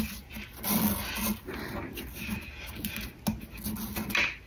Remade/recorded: recorded